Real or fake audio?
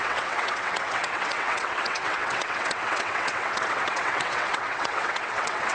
fake